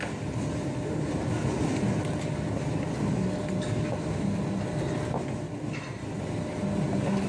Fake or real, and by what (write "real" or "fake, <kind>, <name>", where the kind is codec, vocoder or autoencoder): real